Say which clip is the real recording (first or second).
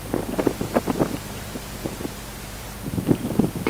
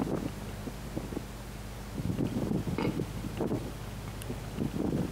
second